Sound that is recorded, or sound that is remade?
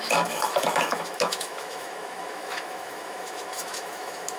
remade